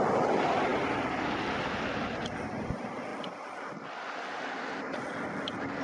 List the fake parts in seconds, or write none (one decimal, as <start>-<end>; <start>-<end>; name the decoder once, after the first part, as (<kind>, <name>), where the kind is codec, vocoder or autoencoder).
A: none